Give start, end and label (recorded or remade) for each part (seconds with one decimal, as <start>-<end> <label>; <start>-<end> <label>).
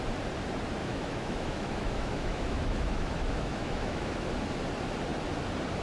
0.0-0.8 recorded; 0.8-4.3 remade; 4.3-5.8 recorded